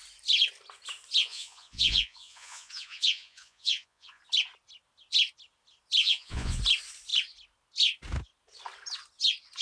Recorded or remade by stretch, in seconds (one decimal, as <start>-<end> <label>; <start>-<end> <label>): 0.0-1.2 recorded; 1.2-4.2 remade; 4.2-6.0 recorded; 6.0-6.6 remade; 6.6-9.6 recorded